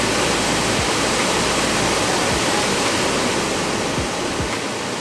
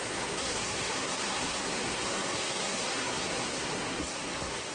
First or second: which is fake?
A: second